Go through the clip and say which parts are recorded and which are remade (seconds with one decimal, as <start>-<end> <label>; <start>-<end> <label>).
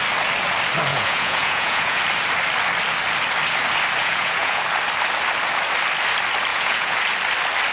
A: 0.0-0.9 recorded; 0.9-2.0 remade; 2.0-4.0 recorded; 4.0-4.6 remade; 4.6-6.5 recorded; 6.5-7.0 remade; 7.0-7.7 recorded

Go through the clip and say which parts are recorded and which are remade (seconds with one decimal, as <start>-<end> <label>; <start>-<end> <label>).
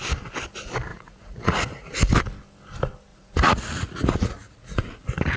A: 0.0-0.9 recorded; 0.9-1.9 remade; 1.9-3.1 recorded; 3.1-5.0 remade; 5.0-5.4 recorded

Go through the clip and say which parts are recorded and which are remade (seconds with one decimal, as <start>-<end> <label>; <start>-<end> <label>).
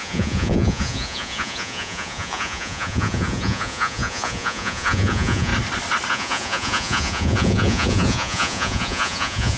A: 0.0-5.5 remade; 5.5-6.1 recorded; 6.1-9.6 remade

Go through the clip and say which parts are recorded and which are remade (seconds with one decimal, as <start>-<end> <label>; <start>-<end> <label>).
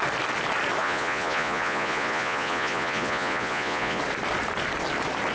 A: 0.0-0.8 recorded; 0.8-4.0 remade; 4.0-5.3 recorded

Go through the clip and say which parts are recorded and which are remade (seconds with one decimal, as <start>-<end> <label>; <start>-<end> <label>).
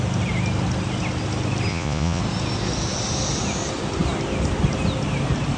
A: 0.0-1.7 recorded; 1.7-2.2 remade; 2.2-5.6 recorded